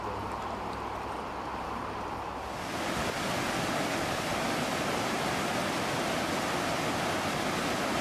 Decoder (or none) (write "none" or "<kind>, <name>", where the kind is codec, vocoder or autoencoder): none